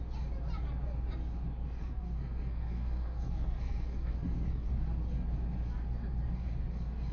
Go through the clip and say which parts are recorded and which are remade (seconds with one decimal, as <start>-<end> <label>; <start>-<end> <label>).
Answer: 0.0-1.8 recorded; 1.8-4.7 remade; 4.7-7.1 recorded